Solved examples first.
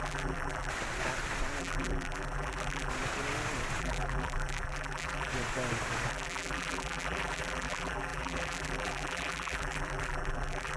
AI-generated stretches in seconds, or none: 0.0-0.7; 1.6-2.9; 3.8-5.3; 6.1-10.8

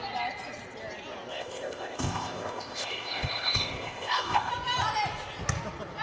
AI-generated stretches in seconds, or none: 1.3-4.5